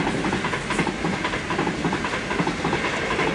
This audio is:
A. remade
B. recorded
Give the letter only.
B